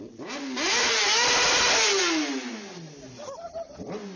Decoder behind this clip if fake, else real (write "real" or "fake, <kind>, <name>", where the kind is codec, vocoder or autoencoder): real